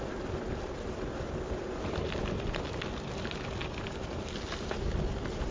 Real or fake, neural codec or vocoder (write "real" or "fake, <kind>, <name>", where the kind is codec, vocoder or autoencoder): real